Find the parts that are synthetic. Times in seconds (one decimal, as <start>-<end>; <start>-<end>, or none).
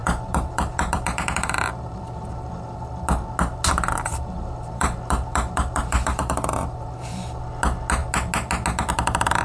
0.0-2.9; 4.1-7.4